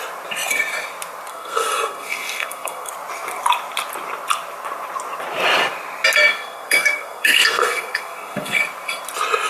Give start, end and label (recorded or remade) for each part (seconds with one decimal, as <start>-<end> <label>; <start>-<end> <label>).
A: 0.0-1.3 recorded; 1.3-2.9 remade; 2.9-6.3 recorded; 6.3-8.6 remade; 8.6-9.5 recorded